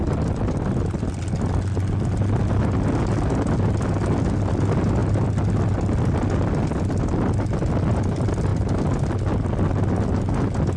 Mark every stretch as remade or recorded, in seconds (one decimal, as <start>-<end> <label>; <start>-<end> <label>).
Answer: 0.0-10.8 recorded